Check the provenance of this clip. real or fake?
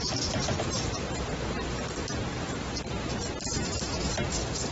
real